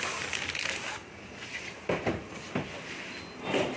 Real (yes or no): yes